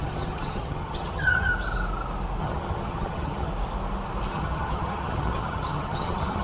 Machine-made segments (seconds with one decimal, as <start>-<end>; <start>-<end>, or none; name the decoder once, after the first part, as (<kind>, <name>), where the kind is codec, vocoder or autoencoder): 0.0-1.5 (vocoder, HiFi-GAN); 2.4-3.5; 4.3-6.4